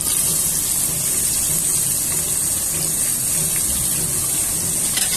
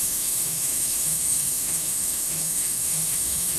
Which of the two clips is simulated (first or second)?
second